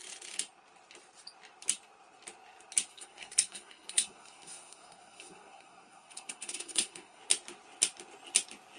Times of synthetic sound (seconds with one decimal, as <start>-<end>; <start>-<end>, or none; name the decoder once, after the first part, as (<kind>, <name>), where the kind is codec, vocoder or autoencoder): 2.9-7.2 (codec, SNAC)

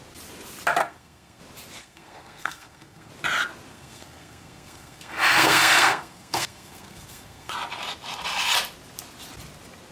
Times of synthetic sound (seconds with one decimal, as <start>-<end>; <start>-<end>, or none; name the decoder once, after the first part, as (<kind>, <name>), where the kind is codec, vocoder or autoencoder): 0.8-1.4 (codec, SNAC); 1.8-3.1; 3.7-7.5